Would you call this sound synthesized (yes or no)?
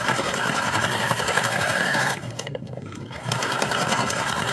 yes